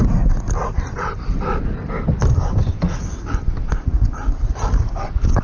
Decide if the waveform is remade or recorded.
recorded